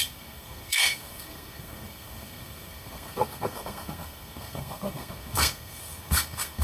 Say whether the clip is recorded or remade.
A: remade